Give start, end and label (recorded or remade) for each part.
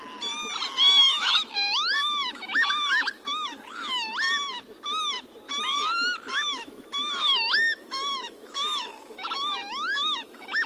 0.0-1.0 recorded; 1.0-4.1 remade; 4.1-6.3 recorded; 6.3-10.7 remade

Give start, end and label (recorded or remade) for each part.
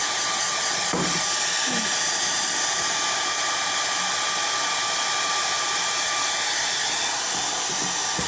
0.0-8.3 recorded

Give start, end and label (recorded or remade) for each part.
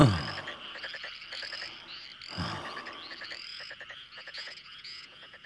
0.0-3.5 recorded; 3.5-5.5 remade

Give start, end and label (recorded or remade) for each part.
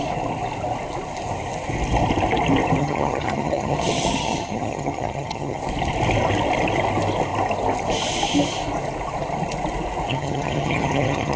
0.0-2.8 recorded; 2.8-5.6 remade; 5.6-10.1 recorded; 10.1-11.4 remade